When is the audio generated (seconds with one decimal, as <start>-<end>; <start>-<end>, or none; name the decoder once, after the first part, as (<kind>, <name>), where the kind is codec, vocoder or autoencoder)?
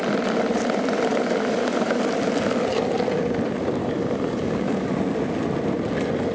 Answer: 1.1-2.1 (codec, DAC); 3.8-4.9